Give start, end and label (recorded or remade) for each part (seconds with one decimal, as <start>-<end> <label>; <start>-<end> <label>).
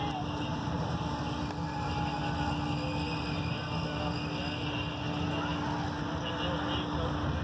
0.0-0.5 recorded; 0.5-1.2 remade; 1.2-7.4 recorded